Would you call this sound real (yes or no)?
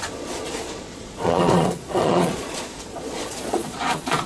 no